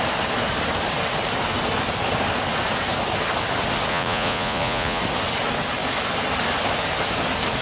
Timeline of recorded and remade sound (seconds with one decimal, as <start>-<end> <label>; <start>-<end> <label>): 0.0-3.9 recorded; 3.9-5.0 remade; 5.0-7.6 recorded